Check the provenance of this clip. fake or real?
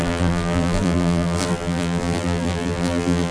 fake